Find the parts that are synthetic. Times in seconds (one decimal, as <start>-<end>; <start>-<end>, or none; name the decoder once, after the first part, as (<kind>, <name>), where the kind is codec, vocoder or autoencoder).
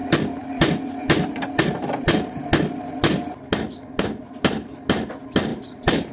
0.0-2.4 (vocoder, BigVGAN v2); 5.5-6.1